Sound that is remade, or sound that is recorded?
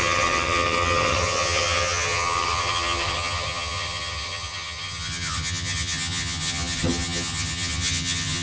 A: remade